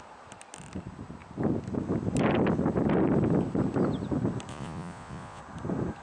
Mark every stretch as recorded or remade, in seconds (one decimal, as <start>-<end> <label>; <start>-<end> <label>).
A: 0.0-4.5 recorded; 4.5-5.4 remade; 5.4-6.0 recorded